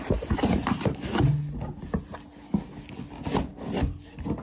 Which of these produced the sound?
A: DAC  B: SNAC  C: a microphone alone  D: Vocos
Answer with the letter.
C